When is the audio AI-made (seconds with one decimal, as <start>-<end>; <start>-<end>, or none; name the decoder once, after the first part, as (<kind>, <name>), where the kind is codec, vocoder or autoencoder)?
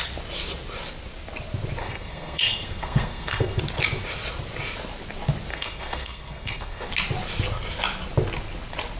1.8-3.6 (codec, SNAC); 5.5-6.9